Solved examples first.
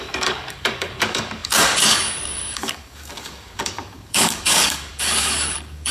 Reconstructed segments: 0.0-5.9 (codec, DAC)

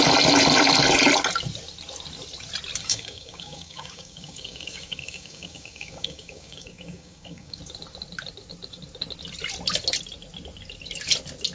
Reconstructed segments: 2.8-7.6 (codec, DAC)

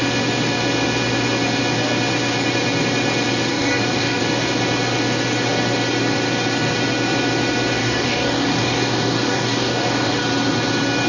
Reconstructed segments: 3.5-4.2 (codec, DAC); 7.8-10.2

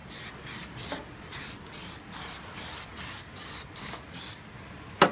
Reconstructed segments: none